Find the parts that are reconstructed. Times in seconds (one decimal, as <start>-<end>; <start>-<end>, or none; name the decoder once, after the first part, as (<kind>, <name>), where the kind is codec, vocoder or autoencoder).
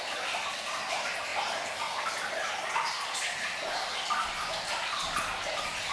none